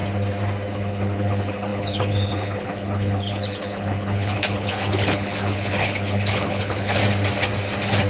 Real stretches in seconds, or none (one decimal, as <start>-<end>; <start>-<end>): 0.0-0.7; 7.0-8.1